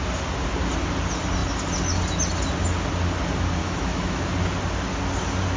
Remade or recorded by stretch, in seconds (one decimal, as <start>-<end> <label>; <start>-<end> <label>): 0.0-3.6 recorded; 3.6-4.2 remade; 4.2-5.6 recorded